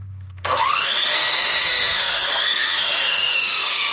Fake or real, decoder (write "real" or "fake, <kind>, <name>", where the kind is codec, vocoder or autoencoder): fake, codec, SNAC